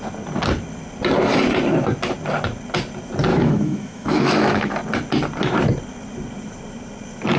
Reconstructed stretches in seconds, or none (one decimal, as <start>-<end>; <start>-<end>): 3.3-4.7